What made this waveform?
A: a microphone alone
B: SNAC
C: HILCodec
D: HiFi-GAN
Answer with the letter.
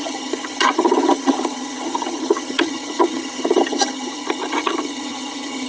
D